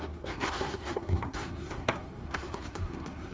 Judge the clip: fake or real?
fake